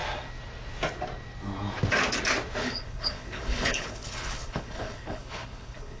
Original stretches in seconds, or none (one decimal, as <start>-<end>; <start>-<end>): 0.0-2.6